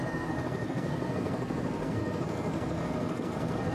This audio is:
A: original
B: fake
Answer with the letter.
B